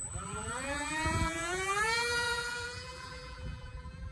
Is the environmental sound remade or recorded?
remade